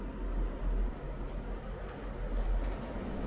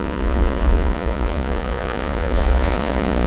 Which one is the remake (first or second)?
second